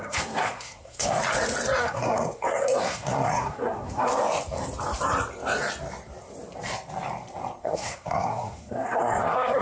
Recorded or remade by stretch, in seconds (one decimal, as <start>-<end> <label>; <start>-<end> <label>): 0.0-1.2 remade; 1.2-1.8 recorded; 1.8-4.1 remade; 4.1-7.6 recorded; 7.6-9.6 remade